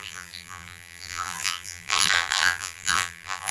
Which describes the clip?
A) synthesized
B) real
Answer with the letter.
A